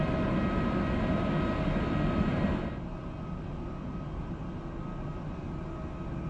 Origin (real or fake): real